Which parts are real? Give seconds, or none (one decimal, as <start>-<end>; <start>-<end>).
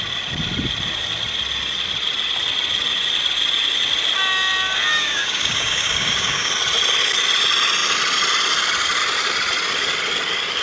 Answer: 0.0-4.9; 6.5-10.6